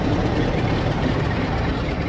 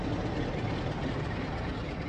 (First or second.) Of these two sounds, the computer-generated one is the first